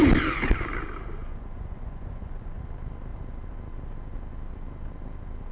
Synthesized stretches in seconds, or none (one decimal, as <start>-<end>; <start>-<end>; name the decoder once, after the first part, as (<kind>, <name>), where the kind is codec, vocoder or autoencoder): 1.2-2.6 (vocoder, Vocos)